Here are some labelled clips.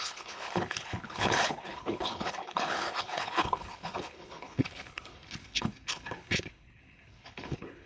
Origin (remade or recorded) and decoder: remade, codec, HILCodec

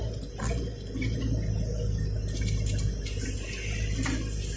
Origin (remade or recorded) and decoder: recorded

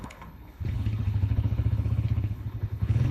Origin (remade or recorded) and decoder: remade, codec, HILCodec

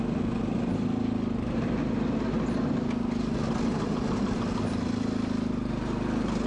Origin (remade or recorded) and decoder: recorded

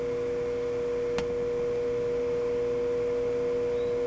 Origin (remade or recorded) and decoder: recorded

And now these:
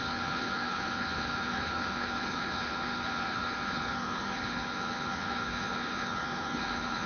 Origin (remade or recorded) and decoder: remade, codec, HILCodec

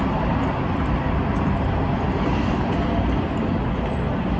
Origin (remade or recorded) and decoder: recorded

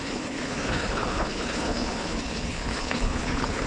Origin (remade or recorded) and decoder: remade, codec, HILCodec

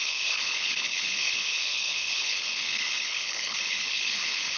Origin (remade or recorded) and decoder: remade, codec, HILCodec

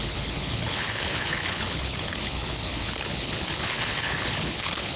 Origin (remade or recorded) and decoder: remade, codec, HILCodec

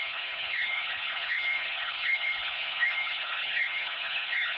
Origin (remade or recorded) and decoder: remade, codec, HILCodec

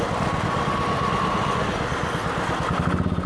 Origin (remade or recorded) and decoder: recorded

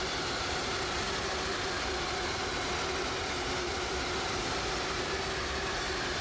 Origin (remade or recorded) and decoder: recorded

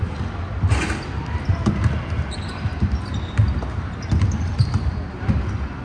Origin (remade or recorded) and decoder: recorded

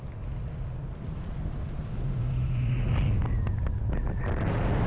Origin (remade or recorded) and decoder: recorded